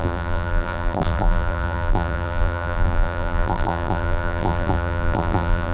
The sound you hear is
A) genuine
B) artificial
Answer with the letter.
B